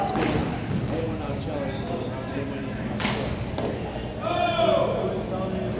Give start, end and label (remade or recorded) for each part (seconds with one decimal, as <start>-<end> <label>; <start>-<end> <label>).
0.0-5.8 recorded